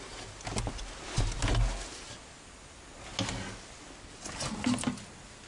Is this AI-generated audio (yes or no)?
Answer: no